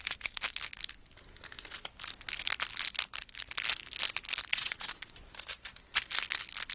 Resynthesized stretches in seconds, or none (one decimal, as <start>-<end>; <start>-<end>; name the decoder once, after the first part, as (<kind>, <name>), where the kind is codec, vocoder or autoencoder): 4.5-5.2 (vocoder, Vocos)